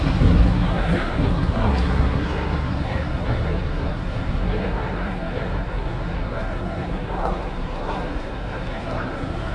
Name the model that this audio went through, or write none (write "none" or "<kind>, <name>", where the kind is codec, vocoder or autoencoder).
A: codec, SNAC